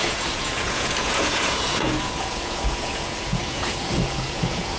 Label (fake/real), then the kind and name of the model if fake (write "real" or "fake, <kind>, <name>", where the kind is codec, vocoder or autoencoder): fake, vocoder, Vocos